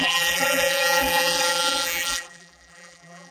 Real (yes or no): no